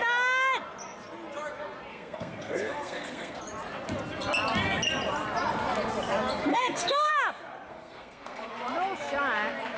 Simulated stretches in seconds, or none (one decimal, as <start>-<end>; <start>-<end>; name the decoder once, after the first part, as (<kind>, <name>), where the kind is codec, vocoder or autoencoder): 1.9-3.4 (codec, SNAC); 6.5-7.1; 7.7-8.5

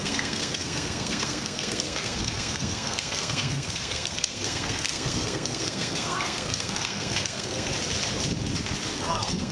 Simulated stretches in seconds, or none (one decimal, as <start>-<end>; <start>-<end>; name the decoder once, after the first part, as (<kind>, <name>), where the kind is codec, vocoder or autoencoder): 0.0-7.7 (codec, SNAC); 9.0-9.5